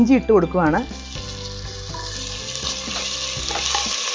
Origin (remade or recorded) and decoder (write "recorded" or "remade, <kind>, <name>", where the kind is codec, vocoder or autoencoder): recorded